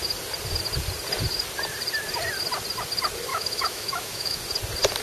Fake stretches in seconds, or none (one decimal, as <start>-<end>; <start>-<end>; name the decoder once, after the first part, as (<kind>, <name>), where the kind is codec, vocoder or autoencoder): 3.3-4.4 (autoencoder, DAC-VAE)